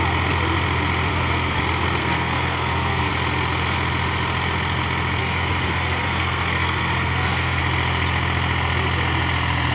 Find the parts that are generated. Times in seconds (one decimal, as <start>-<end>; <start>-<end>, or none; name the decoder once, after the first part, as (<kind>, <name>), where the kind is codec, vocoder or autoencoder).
1.1-1.6 (codec, SNAC); 2.0-3.1; 5.2-7.6